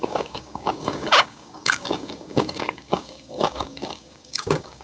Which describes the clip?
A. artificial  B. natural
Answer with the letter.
A